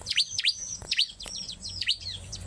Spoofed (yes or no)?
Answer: yes